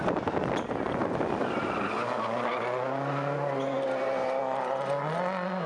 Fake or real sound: real